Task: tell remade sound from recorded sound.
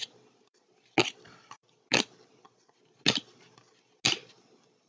recorded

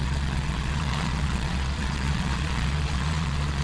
remade